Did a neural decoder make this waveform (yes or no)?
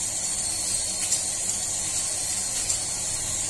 no